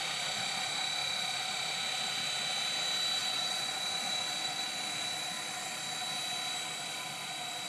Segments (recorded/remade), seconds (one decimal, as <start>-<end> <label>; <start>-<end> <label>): 0.0-3.2 recorded; 3.2-4.6 remade; 4.6-7.7 recorded